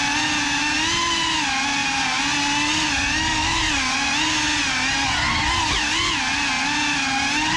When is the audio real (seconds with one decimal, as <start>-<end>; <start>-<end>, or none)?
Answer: 0.0-7.6